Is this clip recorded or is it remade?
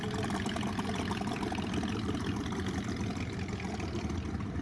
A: remade